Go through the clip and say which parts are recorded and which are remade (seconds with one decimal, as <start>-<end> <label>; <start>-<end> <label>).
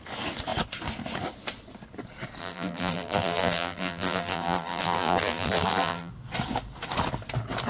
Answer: 0.0-2.4 recorded; 2.4-6.1 remade; 6.1-7.7 recorded